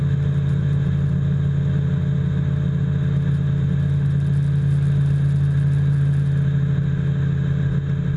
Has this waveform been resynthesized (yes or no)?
no